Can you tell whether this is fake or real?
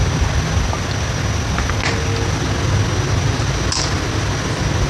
real